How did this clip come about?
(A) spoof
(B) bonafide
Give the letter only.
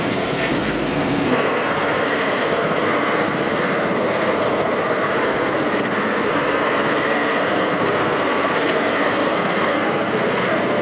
A